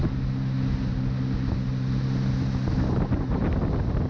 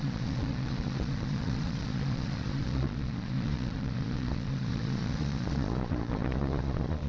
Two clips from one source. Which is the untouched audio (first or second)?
first